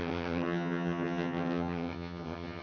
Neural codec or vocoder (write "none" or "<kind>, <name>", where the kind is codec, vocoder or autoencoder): vocoder, HiFi-GAN